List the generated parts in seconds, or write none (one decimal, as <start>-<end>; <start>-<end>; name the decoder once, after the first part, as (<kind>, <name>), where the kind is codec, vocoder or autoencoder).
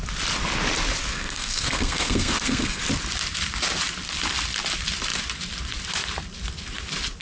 1.1-2.8 (codec, SNAC)